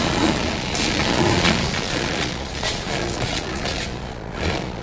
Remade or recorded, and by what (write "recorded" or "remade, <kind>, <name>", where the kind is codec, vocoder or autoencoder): remade, vocoder, Vocos